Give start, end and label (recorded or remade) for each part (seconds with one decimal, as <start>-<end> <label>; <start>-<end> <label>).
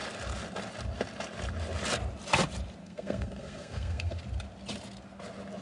0.0-2.8 recorded; 2.8-4.2 remade; 4.2-5.6 recorded